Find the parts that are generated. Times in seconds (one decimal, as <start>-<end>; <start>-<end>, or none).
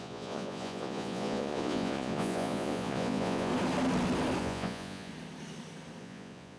0.0-3.5; 4.4-5.1; 6.0-6.6